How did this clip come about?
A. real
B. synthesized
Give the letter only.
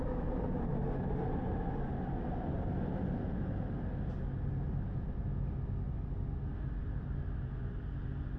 A